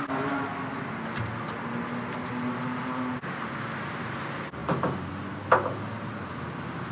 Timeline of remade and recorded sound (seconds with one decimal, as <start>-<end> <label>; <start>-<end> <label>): 0.0-6.9 recorded